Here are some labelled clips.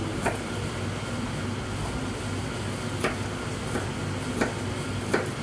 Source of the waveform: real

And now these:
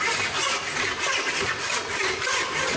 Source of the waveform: real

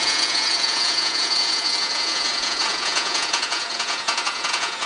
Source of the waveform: fake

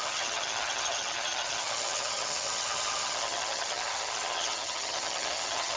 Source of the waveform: fake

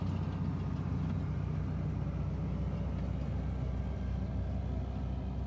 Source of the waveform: real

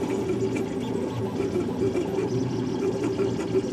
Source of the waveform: real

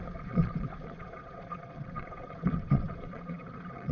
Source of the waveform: fake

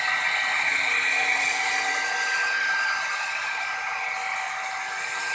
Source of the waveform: real